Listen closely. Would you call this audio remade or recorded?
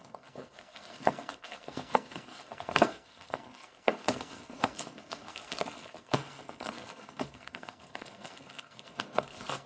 remade